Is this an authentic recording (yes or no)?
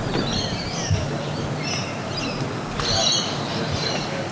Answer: yes